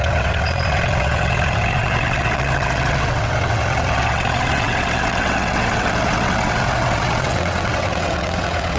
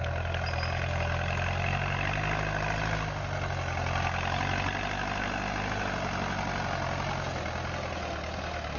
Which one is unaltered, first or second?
second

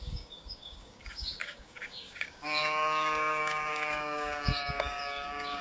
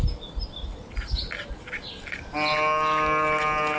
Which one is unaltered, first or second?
second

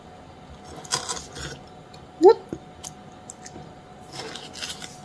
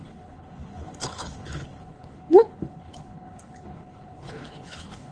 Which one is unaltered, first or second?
first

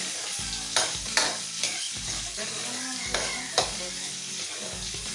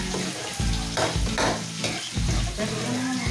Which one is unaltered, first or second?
second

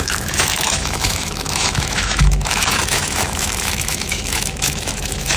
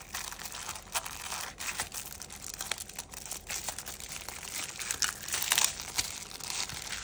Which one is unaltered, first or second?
second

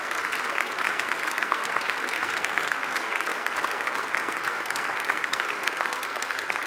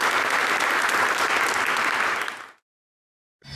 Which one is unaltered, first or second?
second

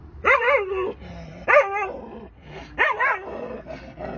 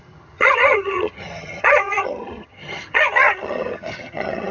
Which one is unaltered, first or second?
first